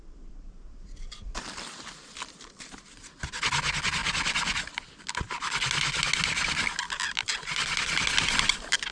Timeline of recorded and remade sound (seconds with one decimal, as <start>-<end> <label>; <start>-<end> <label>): 0.0-8.9 recorded